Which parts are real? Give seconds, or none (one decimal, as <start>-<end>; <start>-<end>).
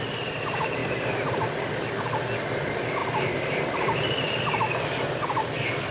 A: 0.0-0.8; 1.7-3.0; 4.4-5.9